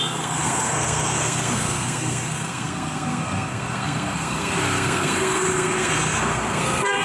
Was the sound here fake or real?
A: fake